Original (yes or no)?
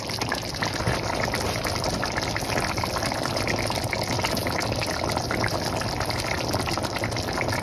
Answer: yes